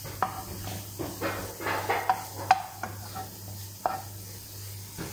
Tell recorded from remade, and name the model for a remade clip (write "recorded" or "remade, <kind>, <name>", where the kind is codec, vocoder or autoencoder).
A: recorded